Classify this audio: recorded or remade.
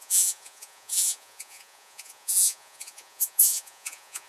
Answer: remade